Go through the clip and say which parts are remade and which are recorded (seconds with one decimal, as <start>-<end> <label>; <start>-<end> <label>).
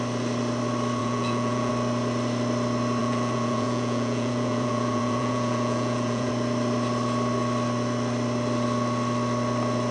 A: 0.0-1.0 recorded; 1.0-1.7 remade; 1.7-3.0 recorded; 3.0-6.3 remade; 6.3-9.9 recorded